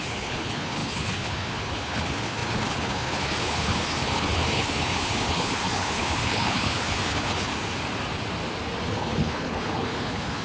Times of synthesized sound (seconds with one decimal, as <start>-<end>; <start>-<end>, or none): 0.0-7.5; 8.8-10.4